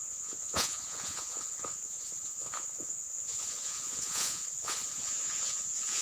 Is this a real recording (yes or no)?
no